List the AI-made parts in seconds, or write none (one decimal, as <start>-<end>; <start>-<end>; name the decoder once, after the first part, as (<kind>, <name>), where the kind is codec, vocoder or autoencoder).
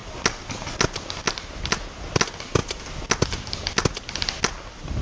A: none